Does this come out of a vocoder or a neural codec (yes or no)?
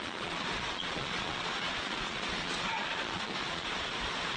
yes